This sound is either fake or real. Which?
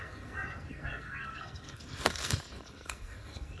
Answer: fake